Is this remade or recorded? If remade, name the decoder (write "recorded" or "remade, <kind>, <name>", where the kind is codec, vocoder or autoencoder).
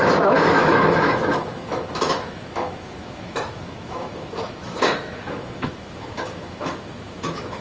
remade, autoencoder, DAC-VAE